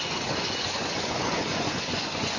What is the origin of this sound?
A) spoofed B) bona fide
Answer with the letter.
A